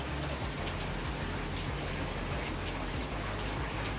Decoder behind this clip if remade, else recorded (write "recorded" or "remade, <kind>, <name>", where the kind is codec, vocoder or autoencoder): recorded